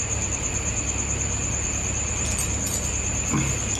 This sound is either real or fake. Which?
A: real